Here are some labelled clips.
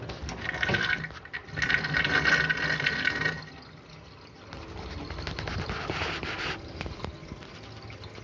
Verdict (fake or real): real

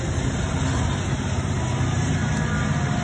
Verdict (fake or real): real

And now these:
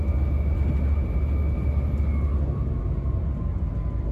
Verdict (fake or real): real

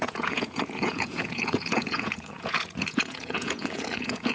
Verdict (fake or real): fake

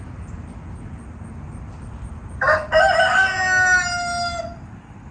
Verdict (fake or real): real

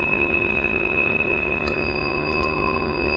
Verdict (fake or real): fake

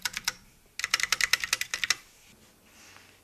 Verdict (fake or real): real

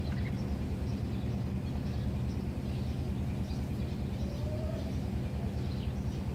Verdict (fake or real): real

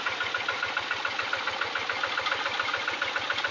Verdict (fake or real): real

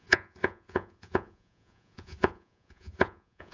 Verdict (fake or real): fake